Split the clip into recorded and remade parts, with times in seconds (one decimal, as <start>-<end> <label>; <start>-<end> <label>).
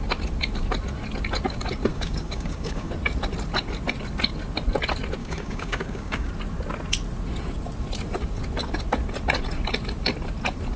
0.0-1.9 recorded; 1.9-2.9 remade; 2.9-5.2 recorded; 5.2-6.3 remade; 6.3-10.8 recorded